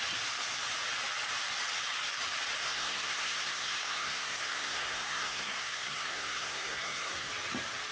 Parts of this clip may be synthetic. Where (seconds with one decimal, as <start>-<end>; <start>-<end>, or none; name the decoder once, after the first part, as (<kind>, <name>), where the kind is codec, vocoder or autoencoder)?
2.6-7.3 (codec, SNAC)

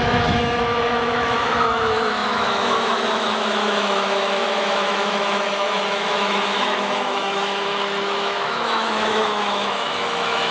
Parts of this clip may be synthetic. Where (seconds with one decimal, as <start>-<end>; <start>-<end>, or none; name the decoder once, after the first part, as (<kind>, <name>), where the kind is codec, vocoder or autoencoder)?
0.0-10.5 (autoencoder, DAC-VAE)

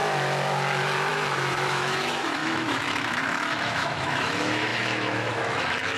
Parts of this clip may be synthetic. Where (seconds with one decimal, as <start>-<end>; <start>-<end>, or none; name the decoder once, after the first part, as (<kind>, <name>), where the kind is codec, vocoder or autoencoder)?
1.1-6.0 (autoencoder, DAC-VAE)

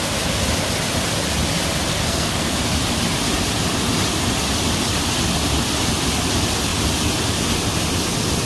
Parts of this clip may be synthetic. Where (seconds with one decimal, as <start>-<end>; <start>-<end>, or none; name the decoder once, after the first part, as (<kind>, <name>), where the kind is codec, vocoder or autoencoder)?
1.9-2.5 (codec, SNAC)

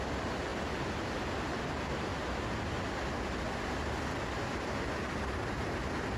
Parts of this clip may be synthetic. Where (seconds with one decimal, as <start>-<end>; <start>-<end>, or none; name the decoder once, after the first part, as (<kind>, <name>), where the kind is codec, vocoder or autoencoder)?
none

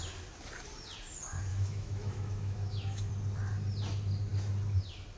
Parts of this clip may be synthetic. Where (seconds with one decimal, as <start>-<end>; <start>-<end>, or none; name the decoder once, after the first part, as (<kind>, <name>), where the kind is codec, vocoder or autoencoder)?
1.5-3.1 (autoencoder, DAC-VAE)